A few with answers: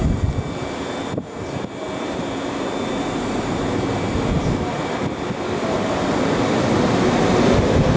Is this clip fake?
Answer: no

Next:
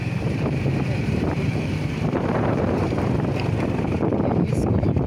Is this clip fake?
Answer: yes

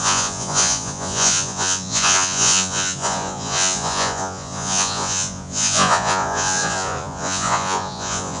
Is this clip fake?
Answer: yes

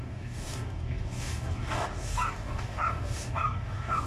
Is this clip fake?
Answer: yes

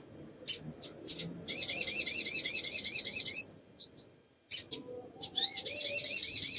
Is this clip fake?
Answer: no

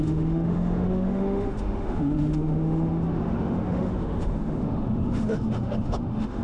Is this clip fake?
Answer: yes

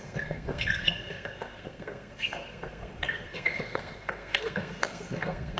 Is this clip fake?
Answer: yes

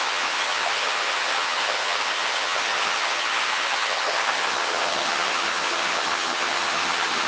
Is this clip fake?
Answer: yes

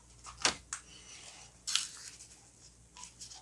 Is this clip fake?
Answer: no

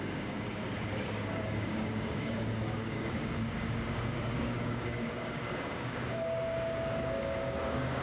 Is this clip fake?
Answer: yes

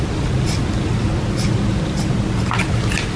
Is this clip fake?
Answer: no